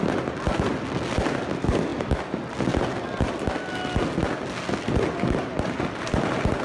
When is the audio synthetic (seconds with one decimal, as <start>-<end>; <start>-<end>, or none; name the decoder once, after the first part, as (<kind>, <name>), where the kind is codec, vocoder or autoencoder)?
none